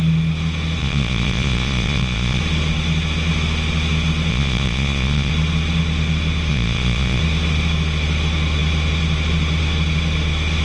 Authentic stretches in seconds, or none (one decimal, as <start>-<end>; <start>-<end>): 0.0-0.8; 2.4-4.3; 5.3-6.5; 7.2-10.6